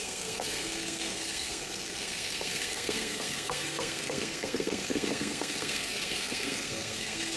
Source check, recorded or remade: remade